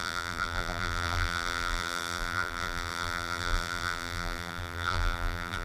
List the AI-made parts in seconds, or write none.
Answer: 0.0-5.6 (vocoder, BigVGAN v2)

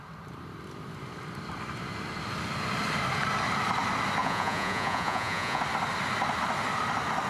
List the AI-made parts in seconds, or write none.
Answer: 4.2-5.6 (vocoder, Vocos)

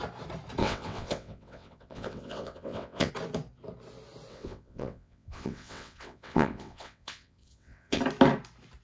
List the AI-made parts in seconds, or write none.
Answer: 0.6-3.1 (vocoder, WaveNeXt); 4.3-8.0